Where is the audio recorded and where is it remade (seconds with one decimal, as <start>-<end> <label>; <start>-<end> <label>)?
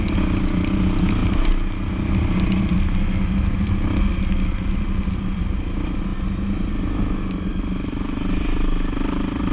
0.0-9.5 recorded